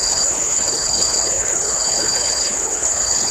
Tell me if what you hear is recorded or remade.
remade